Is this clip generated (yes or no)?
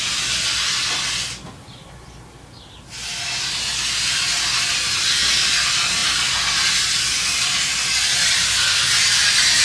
no